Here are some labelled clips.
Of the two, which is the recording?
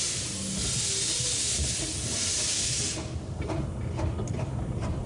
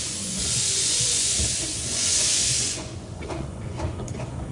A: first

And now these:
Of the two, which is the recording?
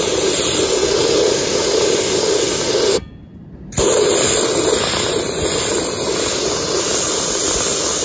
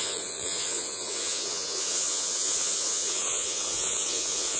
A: first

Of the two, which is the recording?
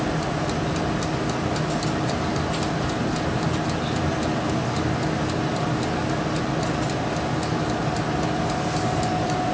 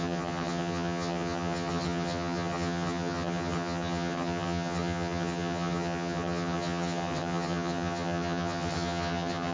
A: first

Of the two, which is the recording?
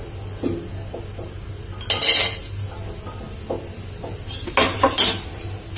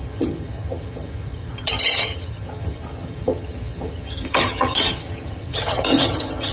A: first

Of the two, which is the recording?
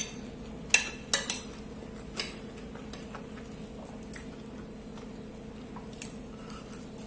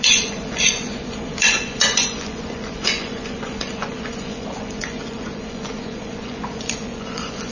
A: first